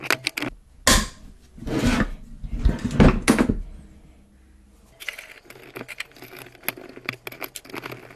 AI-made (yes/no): no